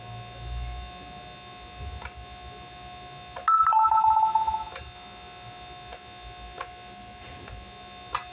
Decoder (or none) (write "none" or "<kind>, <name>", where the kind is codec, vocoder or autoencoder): none